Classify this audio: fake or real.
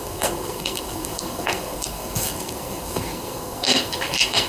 fake